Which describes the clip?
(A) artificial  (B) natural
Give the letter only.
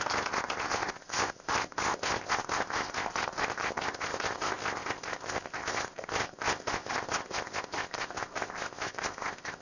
A